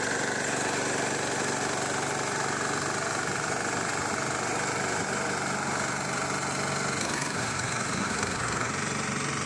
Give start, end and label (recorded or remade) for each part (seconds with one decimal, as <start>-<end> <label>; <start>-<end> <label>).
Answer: 0.0-7.0 recorded; 7.0-8.7 remade; 8.7-9.5 recorded

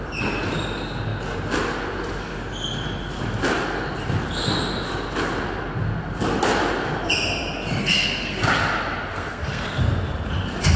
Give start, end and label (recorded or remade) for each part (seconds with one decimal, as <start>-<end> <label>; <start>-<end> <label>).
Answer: 0.0-7.8 recorded; 7.8-8.4 remade; 8.4-9.1 recorded; 9.1-9.8 remade; 9.8-10.8 recorded

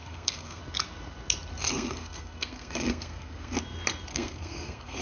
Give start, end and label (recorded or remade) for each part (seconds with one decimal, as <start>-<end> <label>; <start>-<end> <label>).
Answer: 0.0-0.6 remade; 0.6-1.6 recorded; 1.6-3.6 remade; 3.6-4.1 recorded; 4.1-5.0 remade

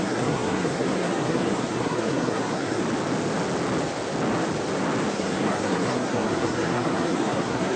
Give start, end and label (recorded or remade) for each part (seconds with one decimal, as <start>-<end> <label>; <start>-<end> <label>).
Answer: 0.0-2.8 remade; 2.8-5.1 recorded; 5.1-7.8 remade